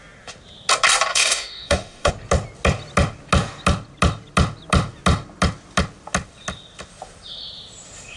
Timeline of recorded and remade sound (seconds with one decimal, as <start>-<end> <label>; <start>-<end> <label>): 0.0-1.1 recorded; 1.1-2.1 remade; 2.1-8.2 recorded

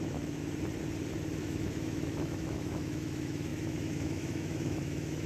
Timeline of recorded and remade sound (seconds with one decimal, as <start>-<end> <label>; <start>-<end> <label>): 0.0-0.4 remade; 0.4-1.4 recorded; 1.4-5.3 remade

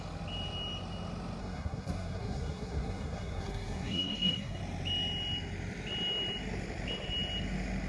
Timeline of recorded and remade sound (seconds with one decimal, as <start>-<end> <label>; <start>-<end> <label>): 0.0-1.4 recorded; 1.4-4.6 remade; 4.6-7.9 recorded

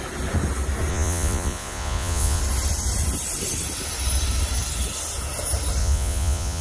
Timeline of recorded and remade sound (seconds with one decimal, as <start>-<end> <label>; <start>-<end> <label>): 0.0-0.9 recorded; 0.9-2.4 remade; 2.4-5.8 recorded; 5.8-6.6 remade